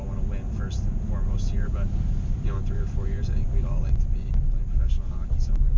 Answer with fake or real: real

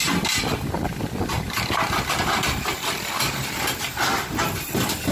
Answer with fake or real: real